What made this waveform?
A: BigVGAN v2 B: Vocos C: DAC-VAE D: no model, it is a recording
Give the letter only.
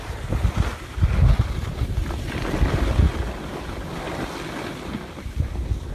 D